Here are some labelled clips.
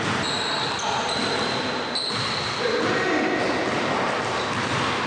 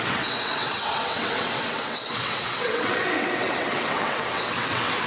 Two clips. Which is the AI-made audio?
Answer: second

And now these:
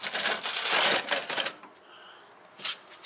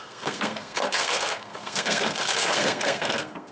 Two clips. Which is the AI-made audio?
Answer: second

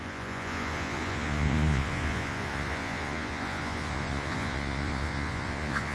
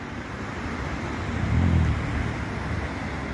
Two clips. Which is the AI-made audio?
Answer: first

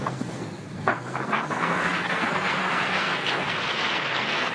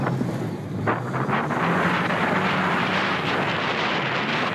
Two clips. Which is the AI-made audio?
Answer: first